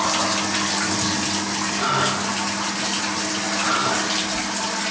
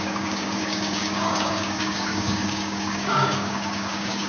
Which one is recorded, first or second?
first